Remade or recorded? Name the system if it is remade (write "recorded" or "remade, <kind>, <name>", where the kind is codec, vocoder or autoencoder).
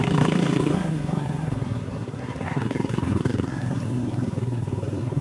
remade, codec, SNAC